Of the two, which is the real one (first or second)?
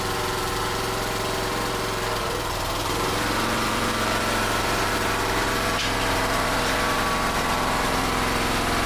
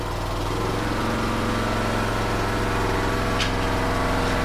second